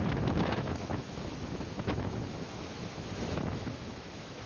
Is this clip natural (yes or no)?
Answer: no